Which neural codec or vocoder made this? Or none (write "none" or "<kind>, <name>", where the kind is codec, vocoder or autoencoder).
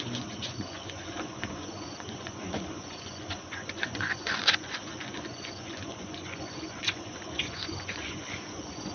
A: vocoder, Vocos